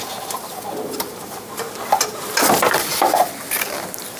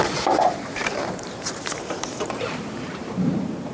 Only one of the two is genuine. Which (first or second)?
first